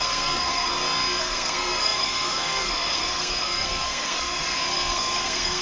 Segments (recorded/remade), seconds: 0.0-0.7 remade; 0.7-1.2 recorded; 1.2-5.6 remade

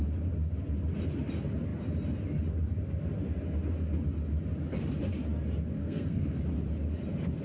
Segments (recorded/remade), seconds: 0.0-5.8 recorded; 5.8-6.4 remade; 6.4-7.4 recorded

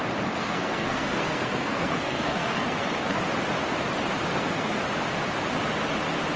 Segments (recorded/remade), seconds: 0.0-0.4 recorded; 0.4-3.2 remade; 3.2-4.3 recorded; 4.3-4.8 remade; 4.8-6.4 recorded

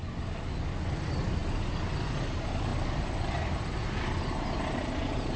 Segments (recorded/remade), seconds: 0.0-5.4 recorded

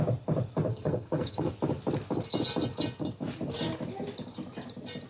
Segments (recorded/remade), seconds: 0.0-0.7 recorded; 0.7-1.5 remade; 1.5-5.1 recorded

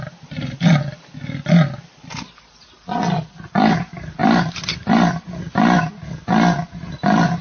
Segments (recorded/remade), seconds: 0.0-7.4 recorded

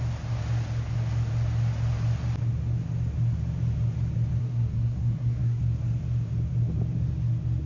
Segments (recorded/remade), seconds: 0.0-4.4 recorded; 4.4-5.6 remade; 5.6-7.7 recorded